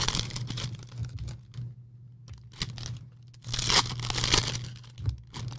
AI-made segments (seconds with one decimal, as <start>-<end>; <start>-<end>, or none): none